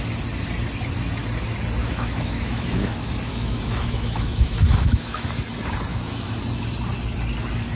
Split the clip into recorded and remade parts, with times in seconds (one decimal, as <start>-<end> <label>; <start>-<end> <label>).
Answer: 0.0-1.8 recorded; 1.8-5.3 remade; 5.3-5.9 recorded; 5.9-6.4 remade; 6.4-7.8 recorded